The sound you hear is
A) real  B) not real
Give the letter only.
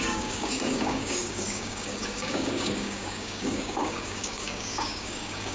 B